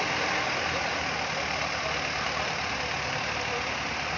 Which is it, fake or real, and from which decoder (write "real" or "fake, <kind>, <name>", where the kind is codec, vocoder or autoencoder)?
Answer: real